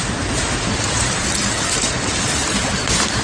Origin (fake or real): real